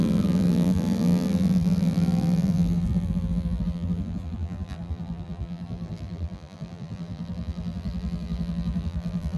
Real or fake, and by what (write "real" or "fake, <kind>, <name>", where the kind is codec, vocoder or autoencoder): fake, vocoder, BigVGAN v2